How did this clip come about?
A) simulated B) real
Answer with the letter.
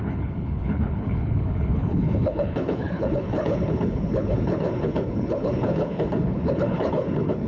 A